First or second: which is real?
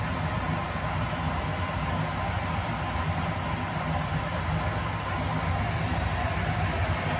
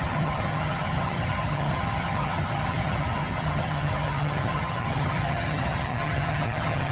first